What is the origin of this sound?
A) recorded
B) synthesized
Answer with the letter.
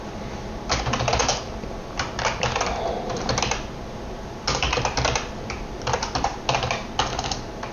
A